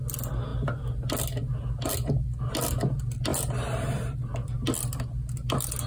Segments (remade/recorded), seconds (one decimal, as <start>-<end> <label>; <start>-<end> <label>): 0.0-5.9 recorded